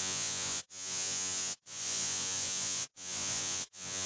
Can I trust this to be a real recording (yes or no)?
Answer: no